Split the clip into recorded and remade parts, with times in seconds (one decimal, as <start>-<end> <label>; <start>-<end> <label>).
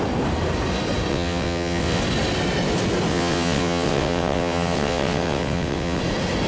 0.0-1.1 recorded; 1.1-2.0 remade; 2.0-3.1 recorded; 3.1-6.0 remade; 6.0-6.5 recorded